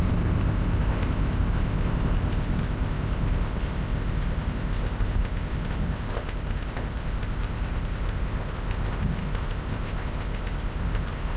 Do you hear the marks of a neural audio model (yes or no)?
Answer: yes